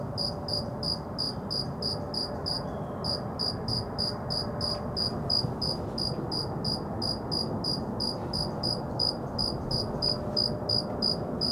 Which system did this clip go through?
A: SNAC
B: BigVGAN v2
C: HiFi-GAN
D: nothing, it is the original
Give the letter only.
D